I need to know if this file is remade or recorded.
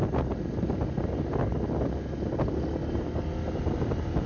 recorded